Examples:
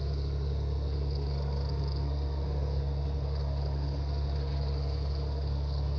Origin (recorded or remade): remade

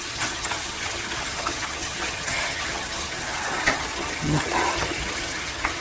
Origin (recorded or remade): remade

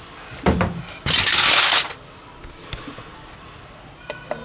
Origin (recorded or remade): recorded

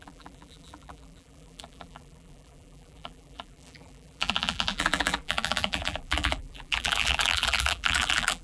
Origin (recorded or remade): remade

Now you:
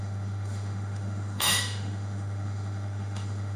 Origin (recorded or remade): remade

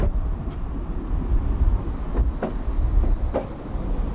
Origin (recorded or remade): recorded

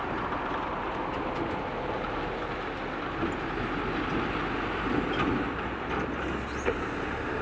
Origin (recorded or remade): recorded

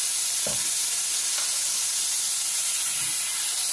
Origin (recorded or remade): recorded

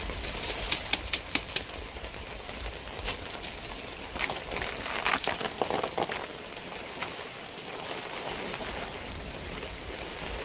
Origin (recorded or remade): recorded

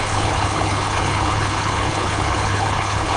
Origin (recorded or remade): remade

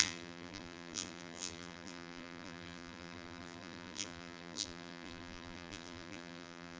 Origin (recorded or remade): remade